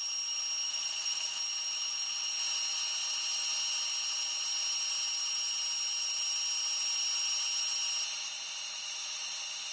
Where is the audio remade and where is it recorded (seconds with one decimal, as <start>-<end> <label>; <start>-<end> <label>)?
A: 0.0-0.7 recorded; 0.7-1.4 remade; 1.4-9.7 recorded

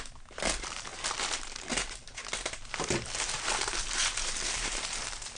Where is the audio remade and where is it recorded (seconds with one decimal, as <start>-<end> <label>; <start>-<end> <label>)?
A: 0.0-0.9 remade; 0.9-2.8 recorded; 2.8-5.4 remade

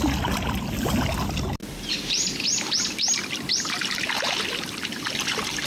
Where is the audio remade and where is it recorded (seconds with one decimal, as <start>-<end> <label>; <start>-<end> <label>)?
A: 0.0-5.7 recorded